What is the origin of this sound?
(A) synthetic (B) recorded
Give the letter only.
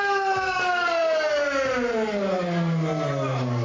B